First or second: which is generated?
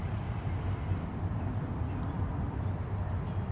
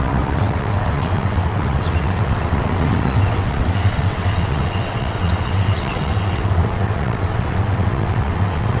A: second